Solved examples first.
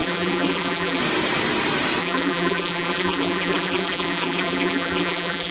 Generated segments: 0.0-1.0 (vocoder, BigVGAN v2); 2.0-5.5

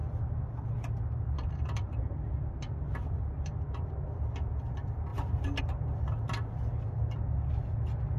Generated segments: none

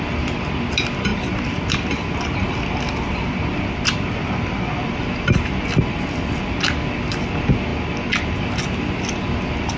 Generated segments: 1.1-5.0 (vocoder, BigVGAN v2)

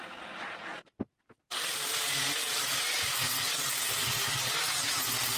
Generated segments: none

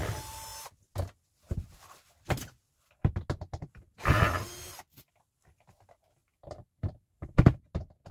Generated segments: 6.2-7.6 (vocoder, BigVGAN v2)

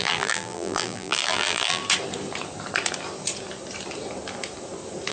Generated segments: 0.0-1.8 (vocoder, BigVGAN v2)

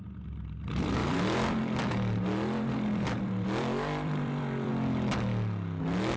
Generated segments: 1.0-4.7 (vocoder, BigVGAN v2)

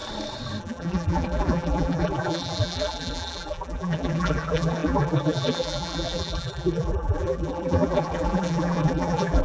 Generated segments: 0.6-9.4 (vocoder, BigVGAN v2)